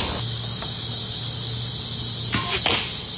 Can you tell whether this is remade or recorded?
recorded